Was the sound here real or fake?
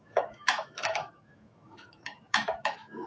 fake